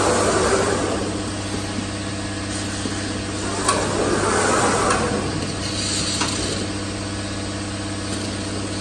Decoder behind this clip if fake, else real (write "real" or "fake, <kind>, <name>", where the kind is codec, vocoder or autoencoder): real